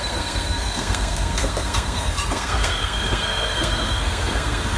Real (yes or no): no